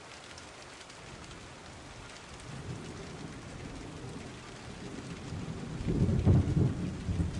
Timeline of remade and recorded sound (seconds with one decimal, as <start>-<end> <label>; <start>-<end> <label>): 0.0-7.4 recorded